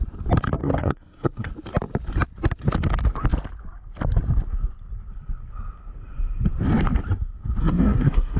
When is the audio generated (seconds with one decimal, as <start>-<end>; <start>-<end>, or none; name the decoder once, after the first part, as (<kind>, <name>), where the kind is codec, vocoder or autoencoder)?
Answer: 0.6-1.5 (codec, SNAC); 7.6-8.4